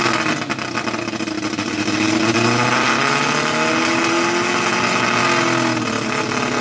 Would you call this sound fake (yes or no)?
no